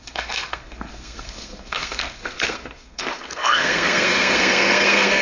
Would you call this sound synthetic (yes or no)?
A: yes